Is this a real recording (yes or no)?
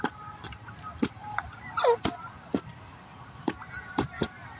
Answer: yes